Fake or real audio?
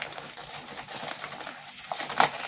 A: real